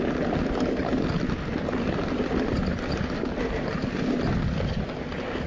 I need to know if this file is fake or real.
real